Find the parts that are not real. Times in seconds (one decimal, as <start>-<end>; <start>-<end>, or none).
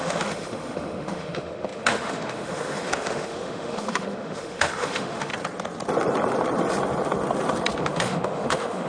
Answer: 0.0-5.3; 7.8-8.9